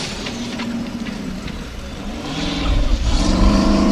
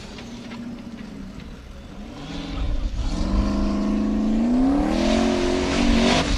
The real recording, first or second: second